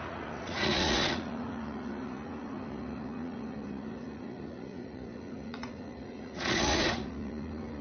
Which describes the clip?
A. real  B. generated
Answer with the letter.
B